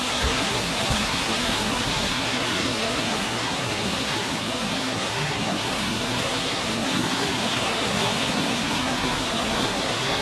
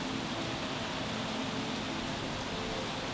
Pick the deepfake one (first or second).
first